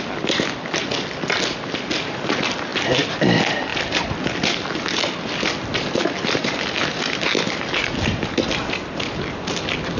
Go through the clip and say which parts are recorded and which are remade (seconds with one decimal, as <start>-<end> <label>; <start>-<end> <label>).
0.0-10.0 recorded